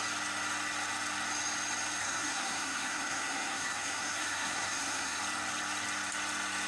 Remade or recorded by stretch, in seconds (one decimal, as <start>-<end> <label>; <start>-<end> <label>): 0.0-2.0 recorded; 2.0-5.2 remade; 5.2-6.7 recorded